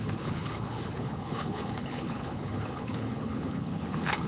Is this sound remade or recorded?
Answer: remade